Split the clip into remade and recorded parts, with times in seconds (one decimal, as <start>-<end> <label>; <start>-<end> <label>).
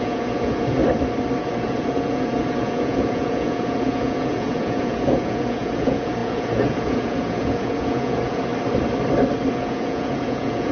0.0-0.8 remade; 0.8-1.4 recorded; 1.4-8.5 remade; 8.5-9.5 recorded; 9.5-10.7 remade